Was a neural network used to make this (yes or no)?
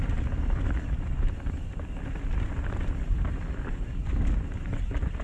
no